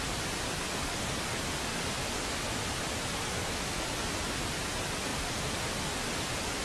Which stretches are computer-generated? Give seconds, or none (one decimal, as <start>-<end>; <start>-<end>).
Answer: 5.1-5.6